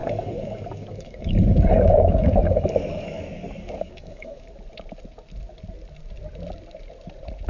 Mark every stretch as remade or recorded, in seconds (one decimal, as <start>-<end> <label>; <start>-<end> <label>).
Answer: 0.0-4.5 remade; 4.5-7.5 recorded